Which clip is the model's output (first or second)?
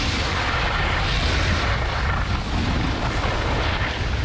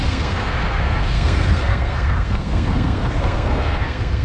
second